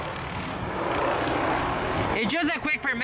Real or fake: real